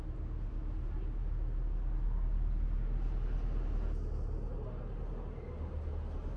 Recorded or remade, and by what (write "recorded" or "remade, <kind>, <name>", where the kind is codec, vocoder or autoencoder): recorded